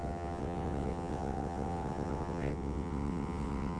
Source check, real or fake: fake